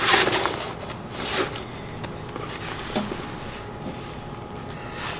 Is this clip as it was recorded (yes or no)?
yes